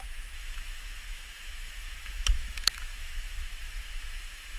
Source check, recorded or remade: remade